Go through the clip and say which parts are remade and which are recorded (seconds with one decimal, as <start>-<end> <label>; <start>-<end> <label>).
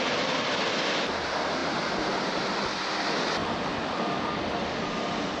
0.0-5.4 recorded